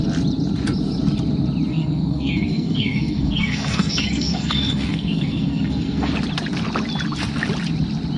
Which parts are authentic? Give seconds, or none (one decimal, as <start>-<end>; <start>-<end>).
0.0-1.7; 6.1-8.2

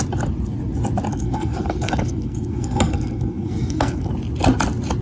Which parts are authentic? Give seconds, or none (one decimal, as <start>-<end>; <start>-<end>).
0.0-1.1; 4.1-5.0

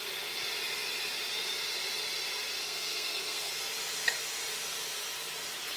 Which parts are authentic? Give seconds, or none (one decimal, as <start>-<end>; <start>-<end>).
0.0-2.6; 3.5-5.8

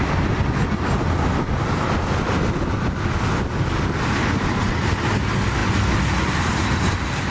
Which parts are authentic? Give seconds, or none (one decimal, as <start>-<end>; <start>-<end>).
0.0-7.3

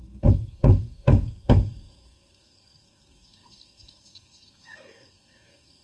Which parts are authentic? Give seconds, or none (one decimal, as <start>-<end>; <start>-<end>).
none

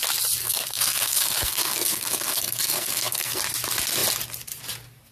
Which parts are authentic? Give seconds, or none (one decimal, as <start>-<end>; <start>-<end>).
0.0-0.4; 3.4-5.1

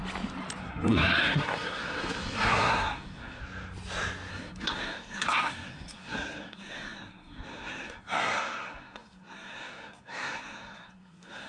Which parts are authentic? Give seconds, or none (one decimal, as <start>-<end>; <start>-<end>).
0.0-0.6; 3.4-4.3